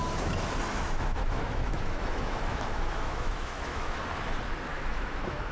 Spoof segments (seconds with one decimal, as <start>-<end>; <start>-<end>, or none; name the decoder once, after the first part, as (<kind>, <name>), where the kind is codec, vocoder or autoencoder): 0.7-4.0 (autoencoder, DAC-VAE); 4.7-5.5